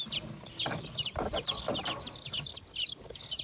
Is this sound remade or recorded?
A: recorded